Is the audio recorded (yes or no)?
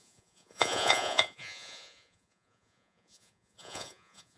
no